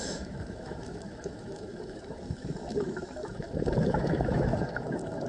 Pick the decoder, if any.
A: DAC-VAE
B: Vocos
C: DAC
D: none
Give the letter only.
A